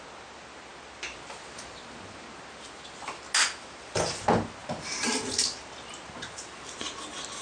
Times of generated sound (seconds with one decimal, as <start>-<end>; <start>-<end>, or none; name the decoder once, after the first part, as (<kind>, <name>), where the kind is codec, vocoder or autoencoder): none